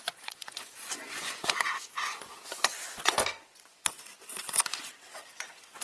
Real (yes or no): no